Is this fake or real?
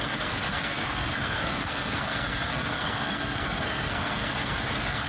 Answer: fake